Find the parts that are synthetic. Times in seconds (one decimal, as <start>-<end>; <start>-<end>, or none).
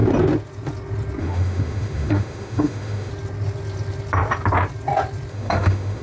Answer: 1.2-3.1; 5.3-6.0